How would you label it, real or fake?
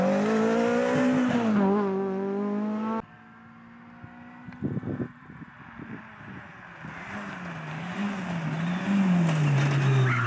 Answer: real